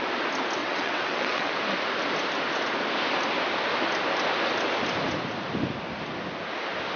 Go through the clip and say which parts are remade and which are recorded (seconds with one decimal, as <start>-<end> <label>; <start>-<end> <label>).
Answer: 0.0-0.6 recorded; 0.6-1.5 remade; 1.5-7.0 recorded

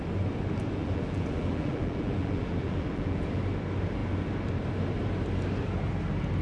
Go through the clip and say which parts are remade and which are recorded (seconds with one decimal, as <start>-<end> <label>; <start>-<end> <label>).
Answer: 0.0-0.8 recorded; 0.8-3.4 remade; 3.4-6.4 recorded

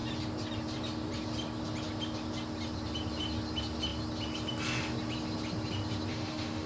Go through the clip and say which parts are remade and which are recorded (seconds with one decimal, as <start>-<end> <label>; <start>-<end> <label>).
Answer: 0.0-6.1 recorded; 6.1-6.7 remade

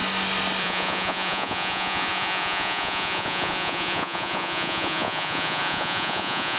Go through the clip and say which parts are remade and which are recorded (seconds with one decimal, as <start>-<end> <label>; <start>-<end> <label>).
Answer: 0.0-0.6 recorded; 0.6-6.6 remade

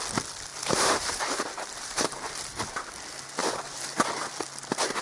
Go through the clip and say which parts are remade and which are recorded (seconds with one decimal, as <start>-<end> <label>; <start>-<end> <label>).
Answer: 0.0-0.5 recorded; 0.5-2.6 remade; 2.6-3.4 recorded; 3.4-4.3 remade; 4.3-5.0 recorded